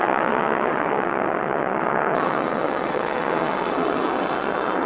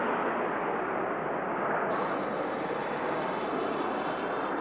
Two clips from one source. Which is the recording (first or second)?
second